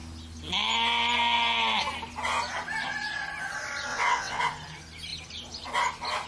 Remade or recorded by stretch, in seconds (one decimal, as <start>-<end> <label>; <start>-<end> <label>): 0.0-3.9 recorded; 3.9-4.4 remade; 4.4-6.3 recorded

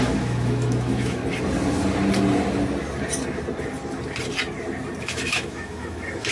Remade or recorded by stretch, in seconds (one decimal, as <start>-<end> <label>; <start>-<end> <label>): 0.0-1.2 remade; 1.2-5.0 recorded; 5.0-6.3 remade

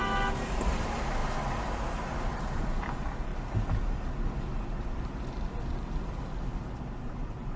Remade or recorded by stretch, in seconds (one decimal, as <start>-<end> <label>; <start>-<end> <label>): 0.0-7.6 recorded

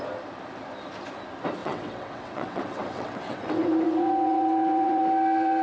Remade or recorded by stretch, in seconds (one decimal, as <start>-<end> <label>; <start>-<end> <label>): 0.0-1.6 recorded; 1.6-5.0 remade; 5.0-5.6 recorded